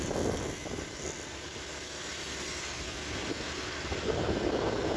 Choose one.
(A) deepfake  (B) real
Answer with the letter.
B